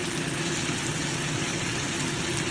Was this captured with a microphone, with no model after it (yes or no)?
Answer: yes